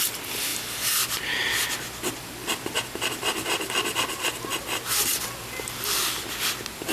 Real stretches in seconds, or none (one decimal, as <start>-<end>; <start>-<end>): 0.0-6.9